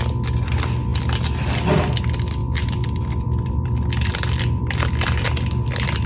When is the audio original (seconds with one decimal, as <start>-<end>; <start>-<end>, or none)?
0.0-2.4